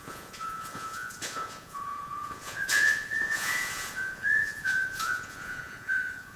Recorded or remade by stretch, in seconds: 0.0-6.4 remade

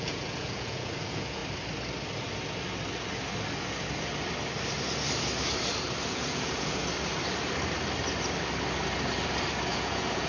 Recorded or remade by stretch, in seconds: 0.0-1.4 remade; 1.4-6.1 recorded; 6.1-6.8 remade; 6.8-9.7 recorded; 9.7-10.3 remade

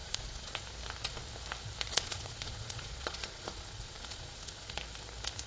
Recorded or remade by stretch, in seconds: 0.0-0.6 remade; 0.6-1.9 recorded; 1.9-4.8 remade; 4.8-5.5 recorded

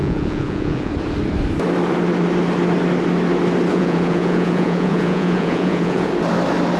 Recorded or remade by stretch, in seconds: 0.0-0.9 remade; 0.9-3.7 recorded; 3.7-6.1 remade; 6.1-6.8 recorded

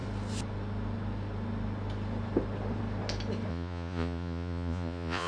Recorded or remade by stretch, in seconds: 0.0-3.5 recorded; 3.5-5.3 remade

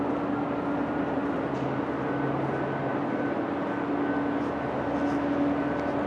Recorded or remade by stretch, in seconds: 0.0-6.1 recorded